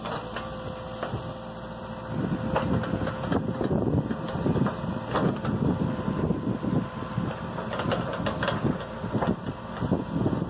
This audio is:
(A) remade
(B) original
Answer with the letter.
B